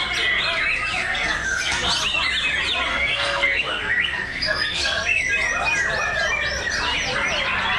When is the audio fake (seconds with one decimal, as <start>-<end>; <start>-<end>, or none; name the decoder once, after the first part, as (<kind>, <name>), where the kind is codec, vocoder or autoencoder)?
1.0-1.9 (codec, SNAC); 2.9-5.3